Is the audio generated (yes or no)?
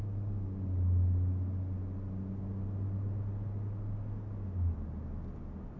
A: no